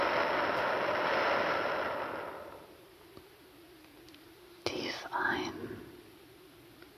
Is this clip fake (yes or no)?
no